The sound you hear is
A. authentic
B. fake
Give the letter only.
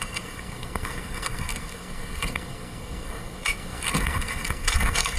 B